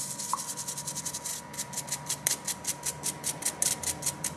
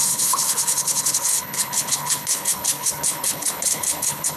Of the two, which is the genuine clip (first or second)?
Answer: first